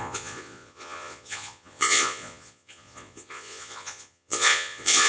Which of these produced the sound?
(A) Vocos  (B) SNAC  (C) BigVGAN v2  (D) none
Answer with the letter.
A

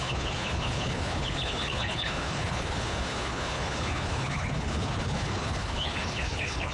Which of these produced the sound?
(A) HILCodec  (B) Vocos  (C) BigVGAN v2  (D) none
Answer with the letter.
A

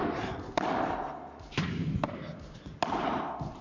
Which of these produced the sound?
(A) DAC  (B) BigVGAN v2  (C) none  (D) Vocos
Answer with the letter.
C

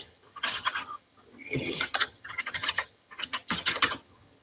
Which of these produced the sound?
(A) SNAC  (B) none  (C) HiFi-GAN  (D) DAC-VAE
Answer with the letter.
C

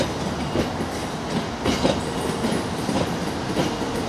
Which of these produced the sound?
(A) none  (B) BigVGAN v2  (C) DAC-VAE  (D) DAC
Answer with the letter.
A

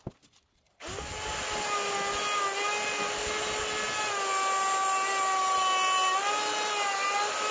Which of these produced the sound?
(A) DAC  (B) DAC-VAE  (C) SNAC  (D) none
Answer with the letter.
D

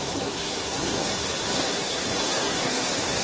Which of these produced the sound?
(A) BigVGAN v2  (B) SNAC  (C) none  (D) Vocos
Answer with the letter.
B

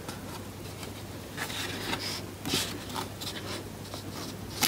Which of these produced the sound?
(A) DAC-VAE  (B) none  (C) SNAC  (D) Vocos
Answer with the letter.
B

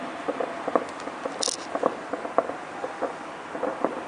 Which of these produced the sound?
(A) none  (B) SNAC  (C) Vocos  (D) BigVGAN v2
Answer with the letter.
A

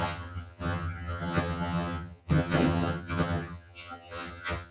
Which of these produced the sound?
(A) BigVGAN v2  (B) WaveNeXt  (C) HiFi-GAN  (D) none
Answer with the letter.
C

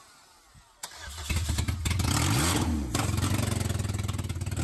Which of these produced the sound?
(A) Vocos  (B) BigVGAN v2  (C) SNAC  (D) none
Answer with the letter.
D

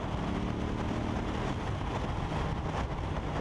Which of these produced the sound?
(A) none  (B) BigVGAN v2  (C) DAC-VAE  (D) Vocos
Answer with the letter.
A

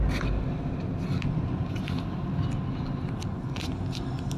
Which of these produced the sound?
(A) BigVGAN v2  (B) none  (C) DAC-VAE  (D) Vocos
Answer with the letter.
B